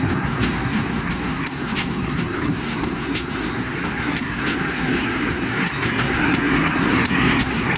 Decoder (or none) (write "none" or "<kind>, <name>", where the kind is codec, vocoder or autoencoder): codec, SNAC